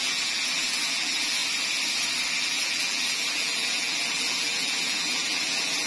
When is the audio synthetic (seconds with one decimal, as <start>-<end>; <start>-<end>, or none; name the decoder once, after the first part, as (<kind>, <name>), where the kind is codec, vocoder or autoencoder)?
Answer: 0.0-1.4 (vocoder, BigVGAN v2); 2.3-5.9